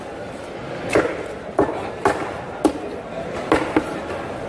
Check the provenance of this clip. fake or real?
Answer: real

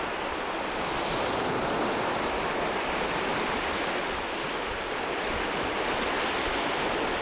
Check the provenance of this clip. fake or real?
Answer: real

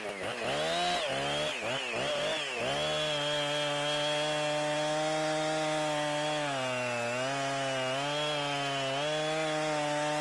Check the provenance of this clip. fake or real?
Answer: real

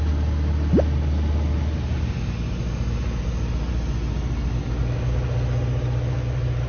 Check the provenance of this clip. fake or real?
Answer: real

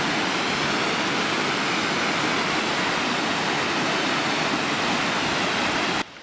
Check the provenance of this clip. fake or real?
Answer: real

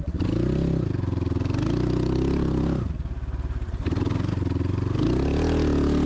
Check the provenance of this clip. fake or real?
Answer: real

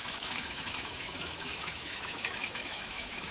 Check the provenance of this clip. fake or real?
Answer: fake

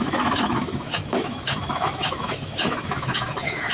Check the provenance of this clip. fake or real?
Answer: fake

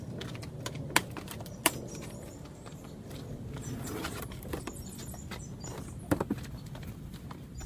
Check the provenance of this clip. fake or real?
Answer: real